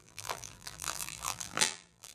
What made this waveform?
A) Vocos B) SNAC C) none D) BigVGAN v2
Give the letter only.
D